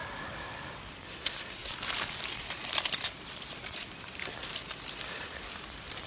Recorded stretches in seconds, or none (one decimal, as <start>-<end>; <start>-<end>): 0.9-6.1